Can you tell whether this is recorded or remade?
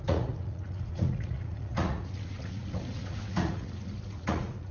remade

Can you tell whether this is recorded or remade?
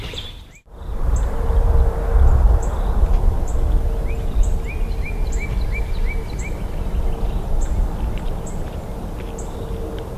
recorded